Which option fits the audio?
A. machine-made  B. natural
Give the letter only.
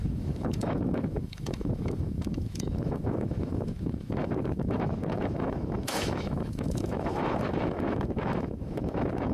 A